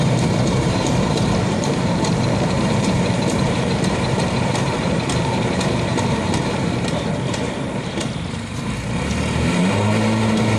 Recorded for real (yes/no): no